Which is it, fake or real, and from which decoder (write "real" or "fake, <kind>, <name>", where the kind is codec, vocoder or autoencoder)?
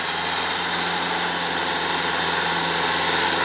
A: real